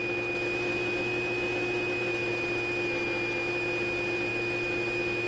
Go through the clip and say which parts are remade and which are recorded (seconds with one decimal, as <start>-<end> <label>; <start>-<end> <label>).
0.0-0.7 recorded; 0.7-2.3 remade; 2.3-4.3 recorded; 4.3-5.3 remade